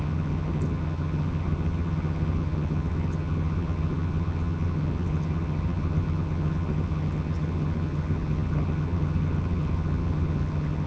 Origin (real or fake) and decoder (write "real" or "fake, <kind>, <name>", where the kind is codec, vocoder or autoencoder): fake, vocoder, HiFi-GAN